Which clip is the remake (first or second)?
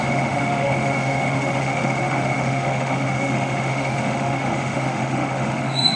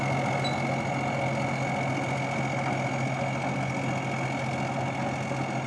first